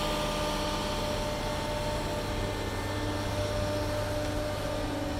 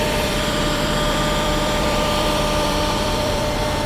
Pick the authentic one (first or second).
first